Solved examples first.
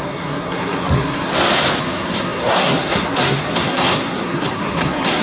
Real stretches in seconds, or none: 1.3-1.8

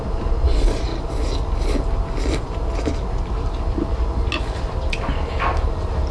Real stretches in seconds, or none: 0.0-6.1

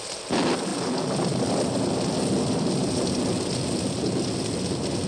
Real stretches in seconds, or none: 0.0-5.1

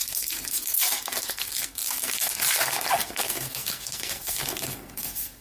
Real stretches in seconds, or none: none

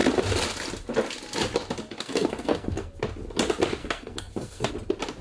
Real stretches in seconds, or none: 0.0-1.9; 2.9-3.8; 4.7-5.2